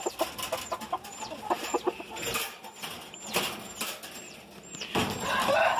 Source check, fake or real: real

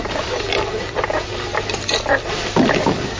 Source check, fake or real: fake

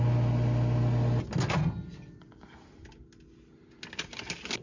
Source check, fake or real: real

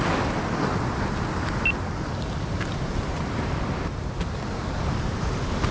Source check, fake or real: real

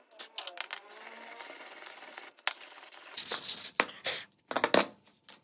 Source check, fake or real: real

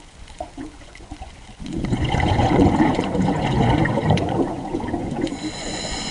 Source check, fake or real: fake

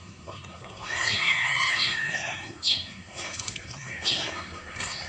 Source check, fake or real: fake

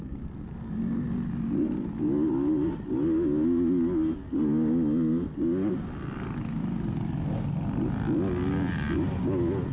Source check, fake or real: real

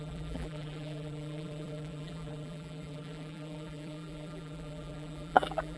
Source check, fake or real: fake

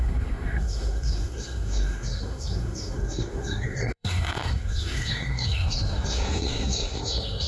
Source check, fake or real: fake